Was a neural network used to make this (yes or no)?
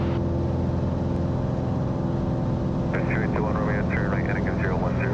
no